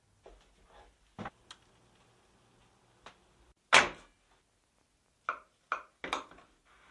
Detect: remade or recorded recorded